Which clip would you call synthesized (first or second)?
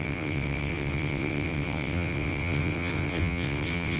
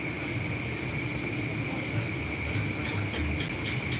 first